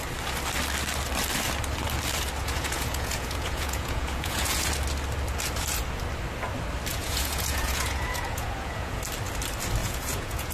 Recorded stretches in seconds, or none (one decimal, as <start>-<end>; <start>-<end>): 0.0-2.4; 4.7-6.9; 9.0-9.8